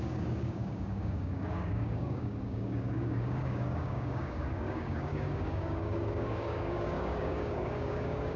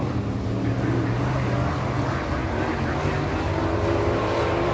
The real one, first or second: second